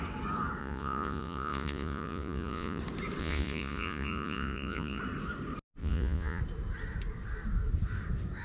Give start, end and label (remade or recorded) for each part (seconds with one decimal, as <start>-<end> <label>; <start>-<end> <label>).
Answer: 0.0-0.6 recorded; 0.6-2.8 remade; 2.8-3.2 recorded; 3.2-5.0 remade; 5.0-5.8 recorded; 5.8-6.4 remade; 6.4-8.4 recorded